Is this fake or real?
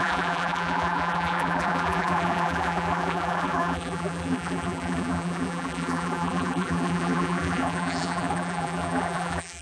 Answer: fake